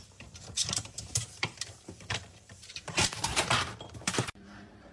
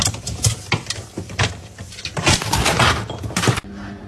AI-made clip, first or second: first